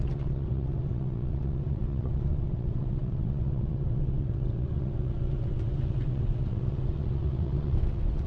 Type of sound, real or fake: fake